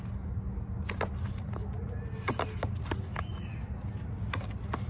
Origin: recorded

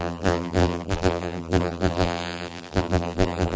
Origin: remade